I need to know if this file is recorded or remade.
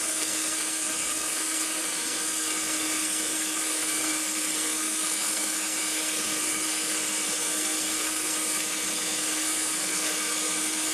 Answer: remade